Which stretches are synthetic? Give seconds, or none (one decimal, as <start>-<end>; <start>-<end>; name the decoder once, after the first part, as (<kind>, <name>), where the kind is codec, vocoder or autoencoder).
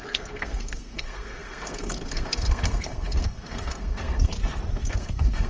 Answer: 0.0-4.3 (codec, SNAC); 4.9-5.5